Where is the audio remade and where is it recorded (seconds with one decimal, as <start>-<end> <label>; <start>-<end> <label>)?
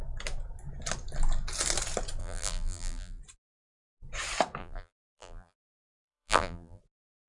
0.0-2.2 recorded; 2.2-3.2 remade; 3.2-4.6 recorded; 4.6-6.8 remade; 6.8-7.3 recorded